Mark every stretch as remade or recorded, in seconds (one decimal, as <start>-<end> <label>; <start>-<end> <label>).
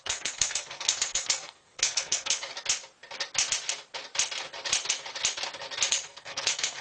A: 0.0-2.5 remade; 2.5-5.9 recorded; 5.9-6.8 remade